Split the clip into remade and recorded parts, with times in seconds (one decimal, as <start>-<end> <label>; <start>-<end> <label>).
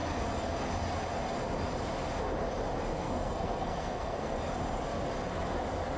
0.0-2.9 recorded; 2.9-4.4 remade; 4.4-6.0 recorded